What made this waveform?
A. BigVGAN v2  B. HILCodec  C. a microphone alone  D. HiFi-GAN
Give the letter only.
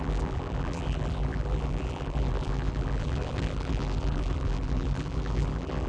A